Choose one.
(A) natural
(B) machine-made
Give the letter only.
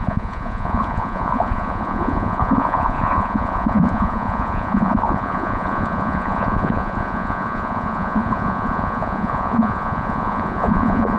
B